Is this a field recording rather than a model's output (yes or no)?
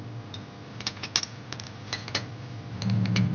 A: yes